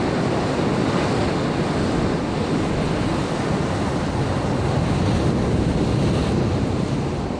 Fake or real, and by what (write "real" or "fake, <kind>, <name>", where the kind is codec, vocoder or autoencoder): real